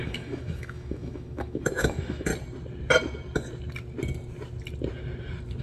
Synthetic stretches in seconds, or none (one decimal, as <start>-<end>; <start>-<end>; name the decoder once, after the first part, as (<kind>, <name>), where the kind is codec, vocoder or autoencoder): 0.0-2.3 (autoencoder, DAC-VAE)